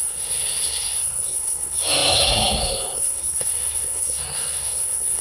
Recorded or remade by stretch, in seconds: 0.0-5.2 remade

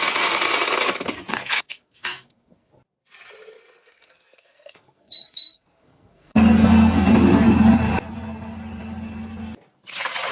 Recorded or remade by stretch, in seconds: 0.0-1.3 recorded; 1.3-2.7 remade; 2.7-3.8 recorded; 3.8-7.1 remade; 7.1-10.3 recorded

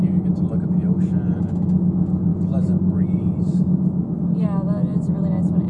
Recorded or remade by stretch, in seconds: 0.0-5.7 recorded

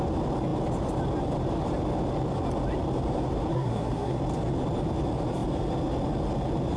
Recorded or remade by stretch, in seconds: 0.0-3.5 recorded; 3.5-4.2 remade; 4.2-6.8 recorded

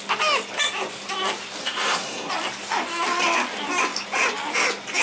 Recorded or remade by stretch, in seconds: 0.0-1.6 recorded; 1.6-2.3 remade; 2.3-5.0 recorded